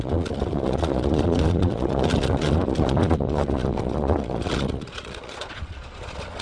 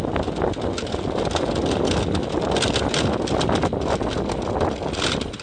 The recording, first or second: second